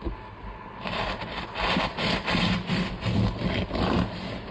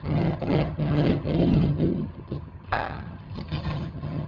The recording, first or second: first